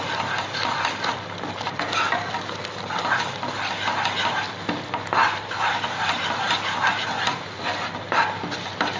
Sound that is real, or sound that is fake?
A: real